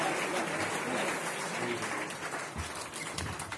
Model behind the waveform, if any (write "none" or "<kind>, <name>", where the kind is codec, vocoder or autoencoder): none